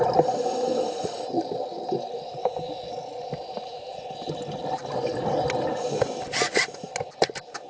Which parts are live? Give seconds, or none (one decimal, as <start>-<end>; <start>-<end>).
0.0-7.7